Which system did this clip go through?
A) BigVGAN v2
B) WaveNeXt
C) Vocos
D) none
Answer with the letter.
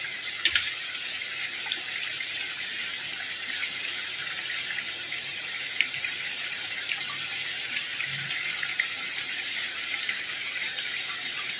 A